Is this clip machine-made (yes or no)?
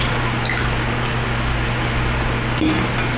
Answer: no